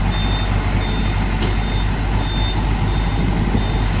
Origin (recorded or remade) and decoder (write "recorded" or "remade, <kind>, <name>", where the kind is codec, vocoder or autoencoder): recorded